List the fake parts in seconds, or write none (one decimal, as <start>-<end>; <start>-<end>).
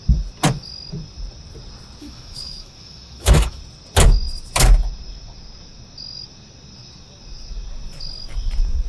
2.0-3.6